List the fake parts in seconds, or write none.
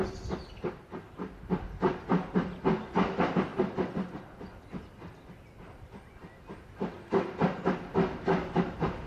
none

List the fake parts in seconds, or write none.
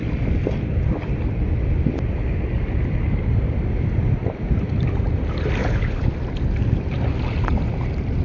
5.6-6.1 (codec, HILCodec)